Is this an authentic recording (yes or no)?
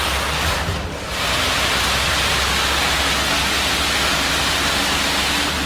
yes